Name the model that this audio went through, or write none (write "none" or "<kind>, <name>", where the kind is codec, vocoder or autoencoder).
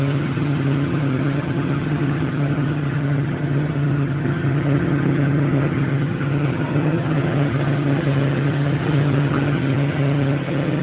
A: vocoder, HiFi-GAN